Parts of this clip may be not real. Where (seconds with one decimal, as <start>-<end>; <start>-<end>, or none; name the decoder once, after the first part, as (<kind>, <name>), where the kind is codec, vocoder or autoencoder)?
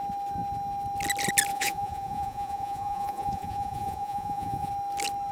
1.5-4.7 (vocoder, Vocos)